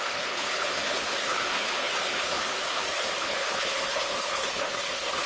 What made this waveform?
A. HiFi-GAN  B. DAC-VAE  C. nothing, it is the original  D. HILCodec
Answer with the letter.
D